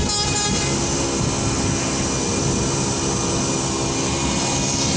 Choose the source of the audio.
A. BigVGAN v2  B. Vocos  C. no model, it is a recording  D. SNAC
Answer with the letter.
C